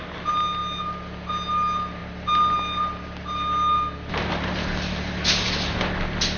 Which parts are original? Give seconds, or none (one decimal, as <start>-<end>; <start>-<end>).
0.0-6.4